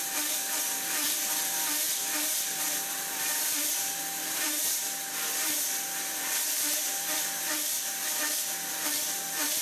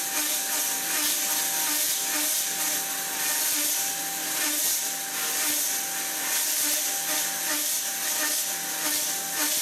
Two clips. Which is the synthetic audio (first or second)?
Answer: first